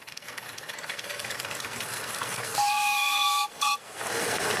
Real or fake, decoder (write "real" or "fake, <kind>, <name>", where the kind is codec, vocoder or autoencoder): fake, codec, SNAC